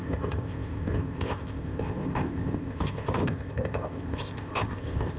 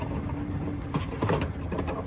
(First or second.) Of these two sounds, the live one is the second